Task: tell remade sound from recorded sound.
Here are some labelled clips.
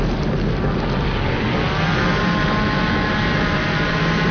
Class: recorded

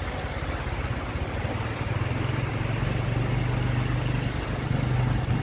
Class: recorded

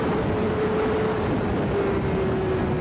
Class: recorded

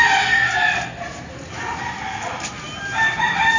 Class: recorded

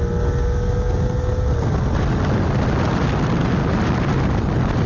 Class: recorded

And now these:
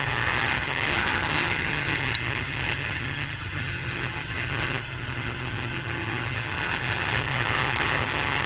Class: remade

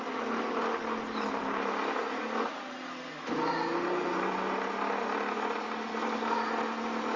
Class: recorded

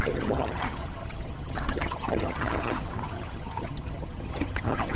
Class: remade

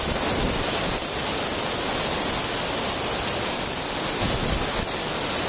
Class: recorded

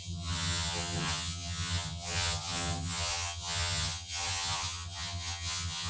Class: remade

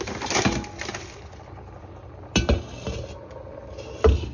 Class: recorded